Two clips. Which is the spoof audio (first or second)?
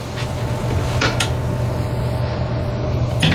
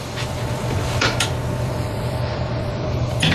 second